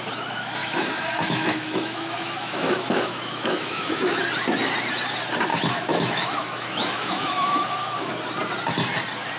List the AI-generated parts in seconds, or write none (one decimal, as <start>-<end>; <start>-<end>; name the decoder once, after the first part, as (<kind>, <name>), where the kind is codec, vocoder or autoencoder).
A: 0.6-4.2 (autoencoder, DAC-VAE); 5.5-8.1